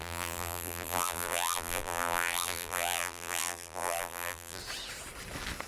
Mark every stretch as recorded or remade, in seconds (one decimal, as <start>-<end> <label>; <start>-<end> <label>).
0.0-4.6 remade; 4.6-5.7 recorded